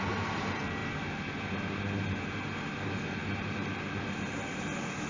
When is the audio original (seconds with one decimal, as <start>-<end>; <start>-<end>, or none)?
0.0-5.1